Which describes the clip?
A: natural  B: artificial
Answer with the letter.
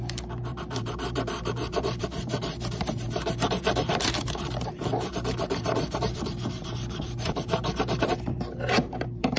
B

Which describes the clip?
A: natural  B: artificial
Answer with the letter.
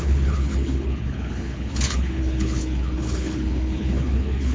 B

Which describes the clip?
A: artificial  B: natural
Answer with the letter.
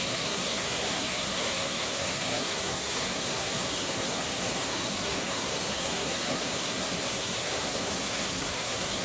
A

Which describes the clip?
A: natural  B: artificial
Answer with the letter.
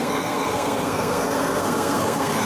B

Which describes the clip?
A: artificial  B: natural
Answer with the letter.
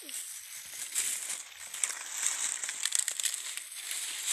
B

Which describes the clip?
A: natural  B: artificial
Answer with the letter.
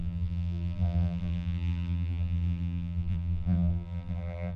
B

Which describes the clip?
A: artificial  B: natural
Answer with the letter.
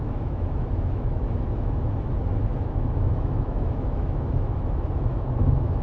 A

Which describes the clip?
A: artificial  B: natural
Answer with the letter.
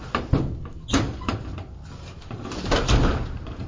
B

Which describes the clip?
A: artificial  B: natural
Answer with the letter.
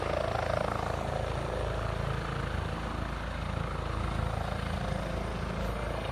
B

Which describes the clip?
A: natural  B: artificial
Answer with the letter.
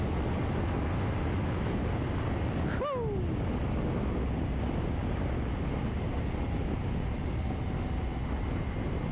A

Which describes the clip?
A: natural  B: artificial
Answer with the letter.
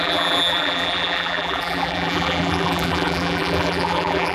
B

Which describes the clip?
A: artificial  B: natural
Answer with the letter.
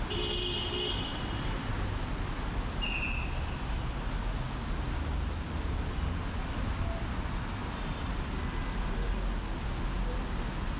B